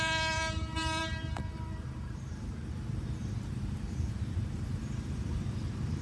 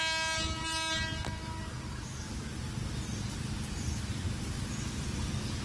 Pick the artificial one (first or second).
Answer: first